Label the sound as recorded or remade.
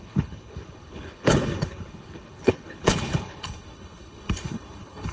remade